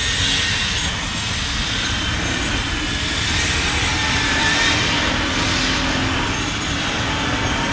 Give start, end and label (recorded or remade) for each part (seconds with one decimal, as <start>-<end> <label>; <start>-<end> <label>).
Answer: 0.0-7.7 recorded